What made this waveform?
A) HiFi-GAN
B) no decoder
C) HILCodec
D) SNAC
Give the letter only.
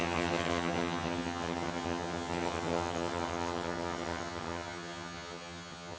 A